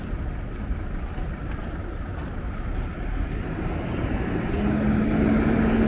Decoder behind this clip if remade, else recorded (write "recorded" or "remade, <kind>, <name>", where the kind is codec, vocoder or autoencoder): recorded